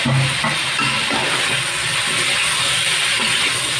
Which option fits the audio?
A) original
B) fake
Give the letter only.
A